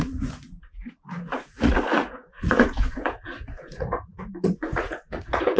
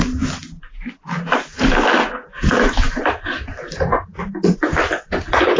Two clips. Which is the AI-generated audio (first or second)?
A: first